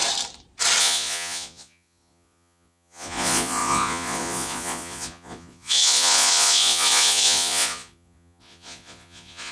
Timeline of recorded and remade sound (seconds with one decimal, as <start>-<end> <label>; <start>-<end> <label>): 0.0-0.8 recorded; 0.8-9.5 remade